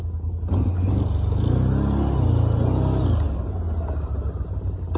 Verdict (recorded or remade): recorded